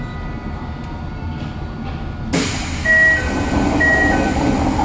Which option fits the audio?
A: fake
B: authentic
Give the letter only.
B